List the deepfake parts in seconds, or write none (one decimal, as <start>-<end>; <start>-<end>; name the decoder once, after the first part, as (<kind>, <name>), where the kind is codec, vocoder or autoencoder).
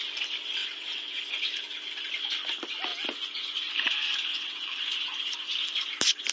0.6-1.2 (vocoder, WaveNeXt); 4.3-4.8